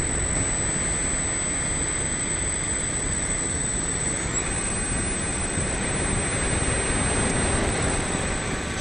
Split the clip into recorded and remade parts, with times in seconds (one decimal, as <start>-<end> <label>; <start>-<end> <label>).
0.0-1.8 recorded; 1.8-4.7 remade; 4.7-5.3 recorded; 5.3-5.8 remade; 5.8-7.6 recorded; 7.6-8.8 remade